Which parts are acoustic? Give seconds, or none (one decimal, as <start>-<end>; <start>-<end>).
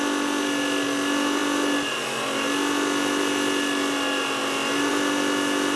0.0-5.8